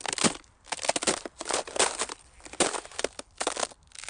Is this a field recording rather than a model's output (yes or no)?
yes